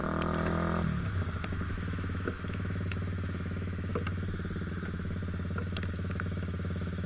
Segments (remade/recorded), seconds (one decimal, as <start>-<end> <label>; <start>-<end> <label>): 0.0-1.7 recorded; 1.7-3.9 remade; 3.9-4.7 recorded; 4.7-5.2 remade; 5.2-5.9 recorded; 5.9-7.1 remade